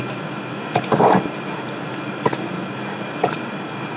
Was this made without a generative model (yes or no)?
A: yes